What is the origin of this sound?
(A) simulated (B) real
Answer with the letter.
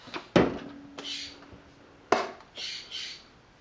B